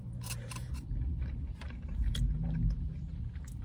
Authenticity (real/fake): fake